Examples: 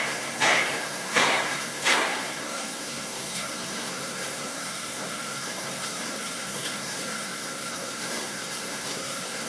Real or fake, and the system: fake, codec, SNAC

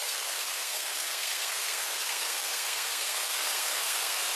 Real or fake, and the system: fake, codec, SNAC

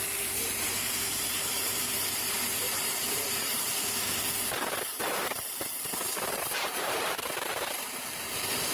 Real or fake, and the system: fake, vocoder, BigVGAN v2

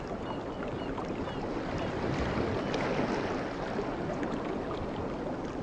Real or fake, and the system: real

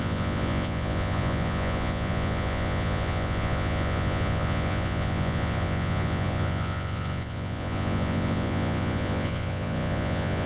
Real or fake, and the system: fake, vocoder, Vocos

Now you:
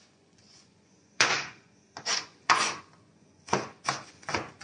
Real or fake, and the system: fake, vocoder, Vocos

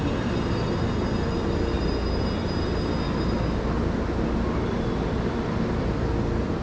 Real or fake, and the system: real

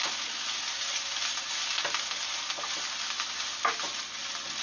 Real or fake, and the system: real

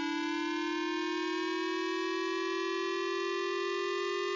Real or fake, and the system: real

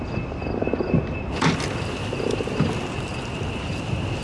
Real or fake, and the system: real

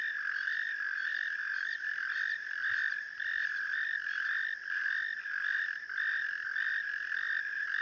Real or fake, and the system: real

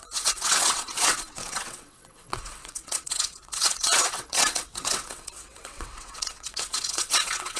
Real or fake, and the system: fake, vocoder, WaveNeXt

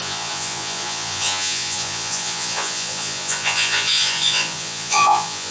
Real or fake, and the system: fake, vocoder, Vocos